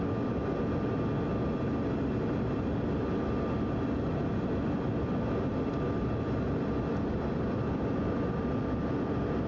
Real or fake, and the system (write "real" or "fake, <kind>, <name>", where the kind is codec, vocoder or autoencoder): real